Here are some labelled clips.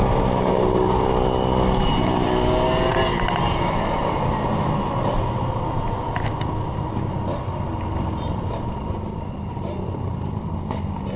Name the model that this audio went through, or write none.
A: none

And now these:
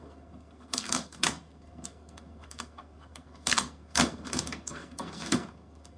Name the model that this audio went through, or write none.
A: codec, SNAC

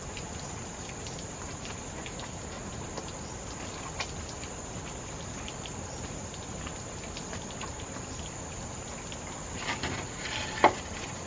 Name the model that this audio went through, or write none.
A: none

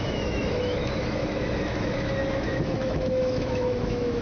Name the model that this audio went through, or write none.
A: autoencoder, DAC-VAE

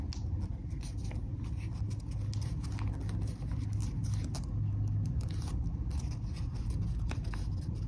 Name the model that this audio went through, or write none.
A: none